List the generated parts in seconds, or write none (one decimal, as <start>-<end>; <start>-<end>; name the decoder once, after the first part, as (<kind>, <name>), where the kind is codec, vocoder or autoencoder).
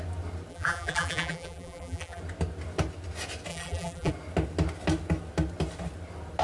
0.5-2.2 (vocoder, BigVGAN v2); 3.5-4.1